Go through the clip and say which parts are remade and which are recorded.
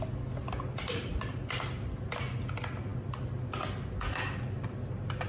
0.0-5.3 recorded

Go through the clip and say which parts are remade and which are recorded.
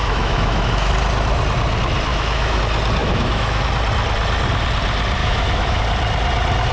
0.0-0.9 remade; 0.9-2.1 recorded; 2.1-2.6 remade; 2.6-3.0 recorded; 3.0-3.6 remade; 3.6-5.2 recorded; 5.2-5.8 remade; 5.8-6.7 recorded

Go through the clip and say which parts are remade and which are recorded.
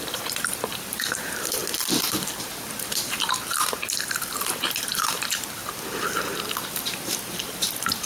0.0-1.6 remade; 1.6-2.4 recorded; 2.4-5.6 remade; 5.6-6.7 recorded; 6.7-8.1 remade